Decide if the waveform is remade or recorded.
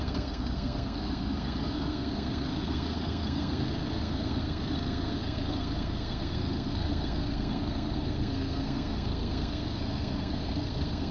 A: remade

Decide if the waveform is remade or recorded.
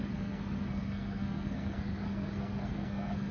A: remade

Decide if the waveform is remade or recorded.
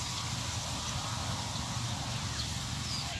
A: recorded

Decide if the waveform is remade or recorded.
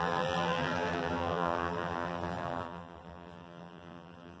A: remade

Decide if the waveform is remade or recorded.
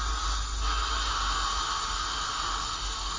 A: recorded